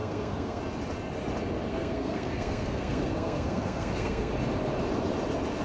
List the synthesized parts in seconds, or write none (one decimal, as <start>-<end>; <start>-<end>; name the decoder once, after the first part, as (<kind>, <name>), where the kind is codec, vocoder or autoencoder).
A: 0.0-0.6 (codec, SNAC); 1.7-4.3